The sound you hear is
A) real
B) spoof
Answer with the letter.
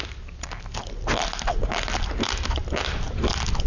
A